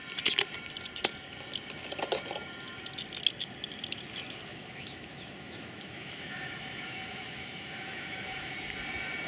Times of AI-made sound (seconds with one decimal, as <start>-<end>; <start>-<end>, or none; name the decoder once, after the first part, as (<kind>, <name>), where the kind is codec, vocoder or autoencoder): 4.5-8.5 (autoencoder, DAC-VAE)